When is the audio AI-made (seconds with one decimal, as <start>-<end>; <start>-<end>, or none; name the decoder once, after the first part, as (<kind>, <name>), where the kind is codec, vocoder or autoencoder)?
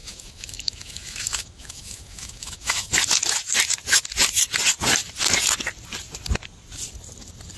0.0-2.9 (autoencoder, DAC-VAE)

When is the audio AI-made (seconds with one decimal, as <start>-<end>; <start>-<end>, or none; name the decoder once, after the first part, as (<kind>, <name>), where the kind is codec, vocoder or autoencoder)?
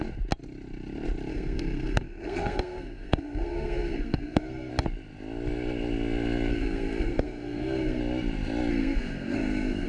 1.3-4.7 (codec, SNAC); 6.5-8.0; 8.7-9.9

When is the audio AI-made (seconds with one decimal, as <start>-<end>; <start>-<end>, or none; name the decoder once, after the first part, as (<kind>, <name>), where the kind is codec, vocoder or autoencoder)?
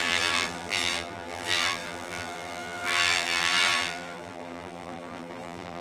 0.0-5.8 (vocoder, BigVGAN v2)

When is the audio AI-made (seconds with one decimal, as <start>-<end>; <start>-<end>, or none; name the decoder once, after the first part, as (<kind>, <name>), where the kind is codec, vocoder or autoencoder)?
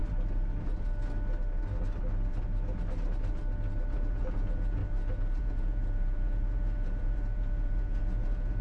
4.1-4.8 (vocoder, Vocos); 5.4-8.6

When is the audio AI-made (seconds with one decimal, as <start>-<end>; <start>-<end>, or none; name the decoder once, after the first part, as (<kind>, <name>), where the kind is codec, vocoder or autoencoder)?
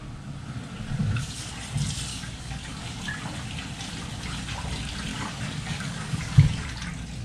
1.0-1.5 (codec, DAC); 2.1-3.0; 5.1-6.7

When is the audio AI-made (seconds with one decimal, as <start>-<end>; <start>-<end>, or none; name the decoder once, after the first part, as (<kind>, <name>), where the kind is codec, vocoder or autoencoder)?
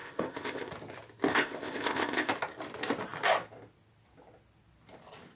0.0-0.7 (codec, ZipCodec); 1.3-2.3